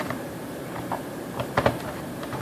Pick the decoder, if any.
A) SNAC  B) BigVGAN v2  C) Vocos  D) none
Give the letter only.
B